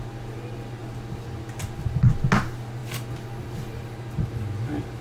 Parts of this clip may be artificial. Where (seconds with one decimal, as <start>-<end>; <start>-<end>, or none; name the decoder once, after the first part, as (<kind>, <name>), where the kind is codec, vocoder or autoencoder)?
none